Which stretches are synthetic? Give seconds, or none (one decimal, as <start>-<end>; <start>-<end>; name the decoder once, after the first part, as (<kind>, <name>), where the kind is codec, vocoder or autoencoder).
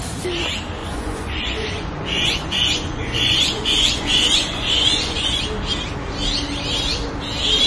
0.8-5.4 (vocoder, Vocos)